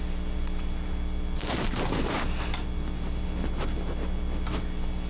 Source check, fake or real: real